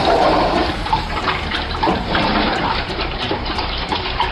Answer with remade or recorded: remade